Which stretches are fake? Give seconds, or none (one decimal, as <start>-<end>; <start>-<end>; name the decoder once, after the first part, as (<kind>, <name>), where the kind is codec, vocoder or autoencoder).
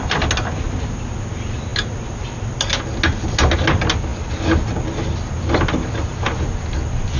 none